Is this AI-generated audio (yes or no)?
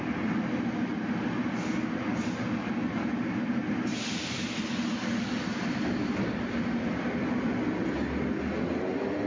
no